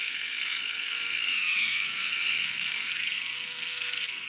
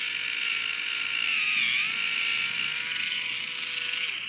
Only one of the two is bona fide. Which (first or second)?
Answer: second